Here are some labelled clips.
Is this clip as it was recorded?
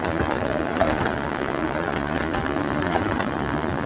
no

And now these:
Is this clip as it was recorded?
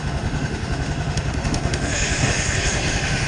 no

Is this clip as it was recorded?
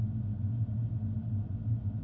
yes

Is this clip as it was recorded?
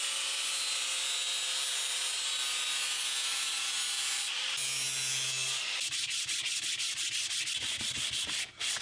yes